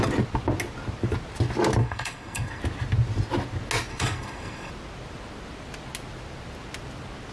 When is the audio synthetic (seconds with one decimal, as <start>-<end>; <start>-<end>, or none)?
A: 1.8-2.6; 3.9-4.7